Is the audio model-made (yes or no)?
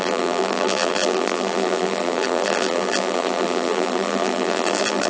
yes